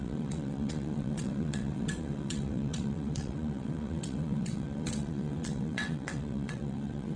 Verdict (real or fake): fake